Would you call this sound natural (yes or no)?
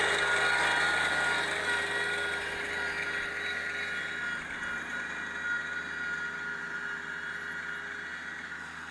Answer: yes